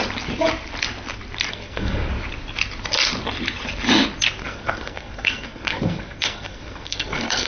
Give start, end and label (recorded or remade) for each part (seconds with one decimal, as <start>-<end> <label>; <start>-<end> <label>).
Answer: 0.0-1.5 recorded; 1.5-2.1 remade; 2.1-4.4 recorded; 4.4-7.5 remade